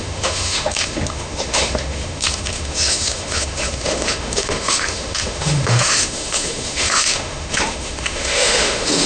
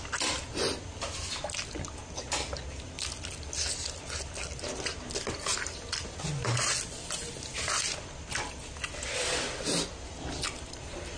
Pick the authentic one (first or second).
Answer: second